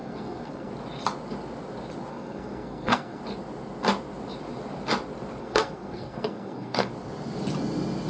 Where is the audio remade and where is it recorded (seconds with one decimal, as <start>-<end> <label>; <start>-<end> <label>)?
0.0-0.7 remade; 0.7-2.1 recorded; 2.1-3.2 remade; 3.2-5.4 recorded; 5.4-6.9 remade; 6.9-8.1 recorded